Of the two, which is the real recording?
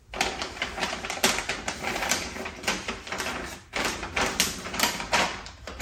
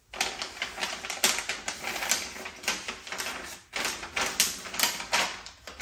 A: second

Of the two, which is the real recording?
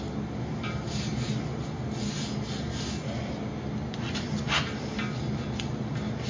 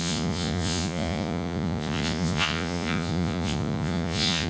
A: first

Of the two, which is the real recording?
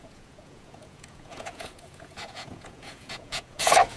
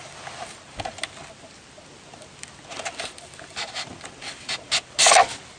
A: second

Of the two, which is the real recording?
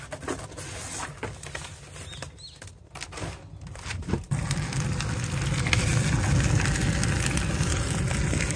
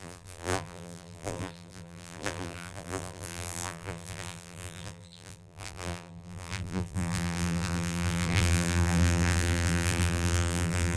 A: first